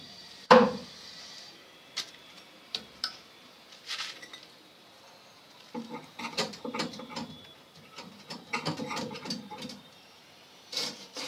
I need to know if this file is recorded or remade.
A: remade